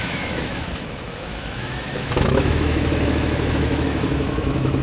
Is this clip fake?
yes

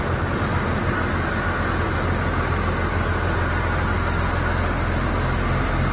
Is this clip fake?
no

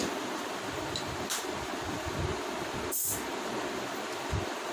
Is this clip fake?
no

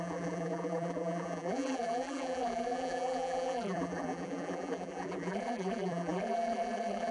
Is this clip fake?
yes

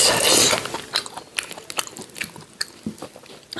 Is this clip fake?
no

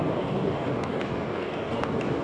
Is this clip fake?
yes